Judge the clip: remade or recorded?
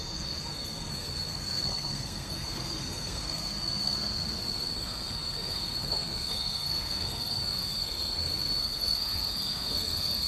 remade